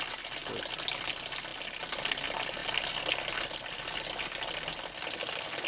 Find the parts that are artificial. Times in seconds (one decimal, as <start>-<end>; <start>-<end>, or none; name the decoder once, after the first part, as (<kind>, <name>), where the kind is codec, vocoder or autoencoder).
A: none